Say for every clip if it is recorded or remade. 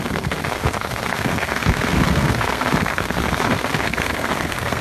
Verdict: remade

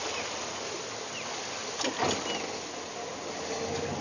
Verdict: recorded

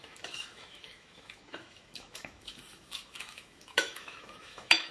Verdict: remade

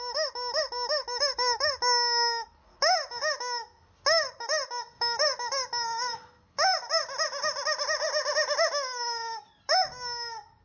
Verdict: recorded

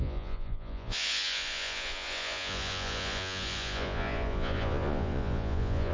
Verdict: remade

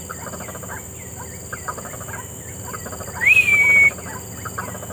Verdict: recorded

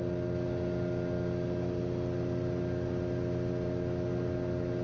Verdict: recorded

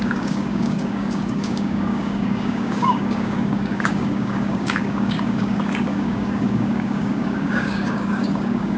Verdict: remade